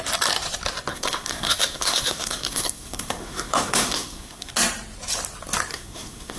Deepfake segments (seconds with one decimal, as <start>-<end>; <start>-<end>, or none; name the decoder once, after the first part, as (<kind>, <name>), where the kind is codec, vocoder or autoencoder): 0.9-4.5 (codec, SNAC); 5.7-6.4